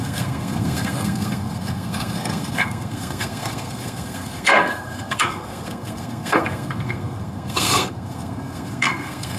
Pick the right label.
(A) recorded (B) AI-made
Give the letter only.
B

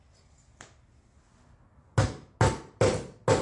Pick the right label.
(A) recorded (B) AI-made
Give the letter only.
A